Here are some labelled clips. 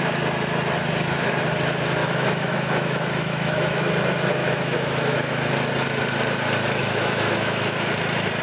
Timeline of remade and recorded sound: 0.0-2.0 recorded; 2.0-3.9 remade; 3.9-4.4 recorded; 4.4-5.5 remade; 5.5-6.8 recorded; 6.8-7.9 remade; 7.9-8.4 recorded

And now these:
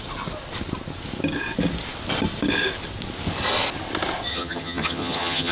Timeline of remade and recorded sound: 0.0-4.3 recorded; 4.3-5.5 remade

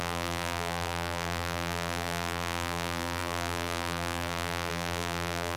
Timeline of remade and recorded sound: 0.0-5.6 remade

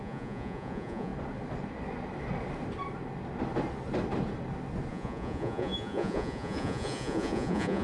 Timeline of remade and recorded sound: 0.0-1.1 remade; 1.1-4.9 recorded; 4.9-7.8 remade